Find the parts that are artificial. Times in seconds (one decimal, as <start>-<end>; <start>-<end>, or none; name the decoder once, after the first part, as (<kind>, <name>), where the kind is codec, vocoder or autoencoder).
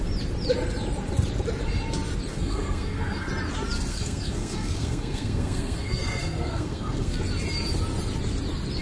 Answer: 2.3-3.3 (codec, SNAC); 3.9-7.2